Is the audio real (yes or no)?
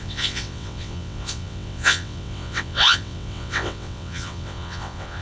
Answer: no